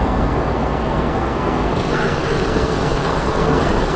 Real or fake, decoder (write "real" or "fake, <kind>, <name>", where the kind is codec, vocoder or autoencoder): fake, codec, SNAC